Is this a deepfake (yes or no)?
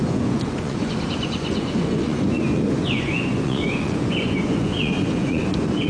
yes